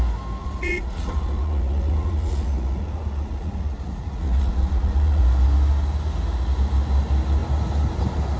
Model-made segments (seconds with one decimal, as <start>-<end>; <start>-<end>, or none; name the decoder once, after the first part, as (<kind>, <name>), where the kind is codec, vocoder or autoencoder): 0.4-5.2 (vocoder, Vocos)